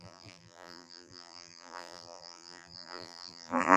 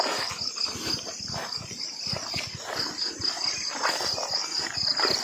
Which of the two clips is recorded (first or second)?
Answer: second